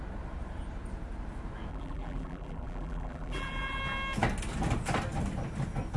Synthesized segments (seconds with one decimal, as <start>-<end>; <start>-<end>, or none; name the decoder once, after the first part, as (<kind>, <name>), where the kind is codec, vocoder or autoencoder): 1.7-3.8 (vocoder, BigVGAN v2)